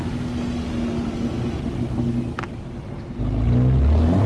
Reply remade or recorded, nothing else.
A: recorded